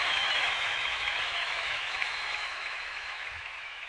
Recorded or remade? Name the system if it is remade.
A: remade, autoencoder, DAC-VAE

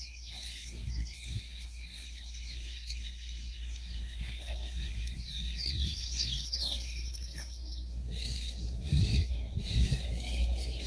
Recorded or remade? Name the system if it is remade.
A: remade, codec, SNAC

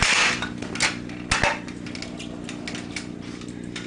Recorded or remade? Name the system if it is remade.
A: recorded